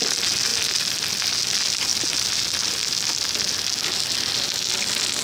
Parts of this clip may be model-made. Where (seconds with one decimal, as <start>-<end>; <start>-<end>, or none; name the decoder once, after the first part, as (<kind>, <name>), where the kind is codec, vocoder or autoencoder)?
none